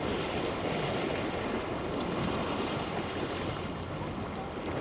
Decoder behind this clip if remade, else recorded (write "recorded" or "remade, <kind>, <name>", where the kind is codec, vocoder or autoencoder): recorded